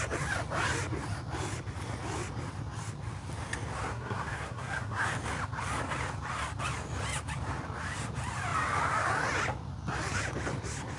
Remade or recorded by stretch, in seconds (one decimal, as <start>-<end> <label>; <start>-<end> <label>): 0.0-3.9 recorded; 3.9-5.1 remade; 5.1-11.0 recorded